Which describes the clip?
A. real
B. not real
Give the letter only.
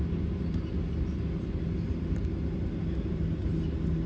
A